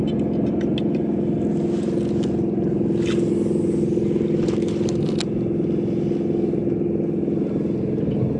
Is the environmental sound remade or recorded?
recorded